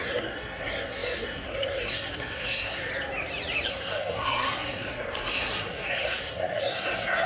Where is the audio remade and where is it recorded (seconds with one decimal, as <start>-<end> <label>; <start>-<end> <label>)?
0.0-2.8 remade; 2.8-3.7 recorded; 3.7-7.3 remade